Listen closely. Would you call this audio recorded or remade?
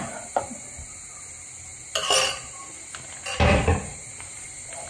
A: recorded